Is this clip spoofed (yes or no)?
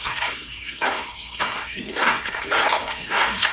yes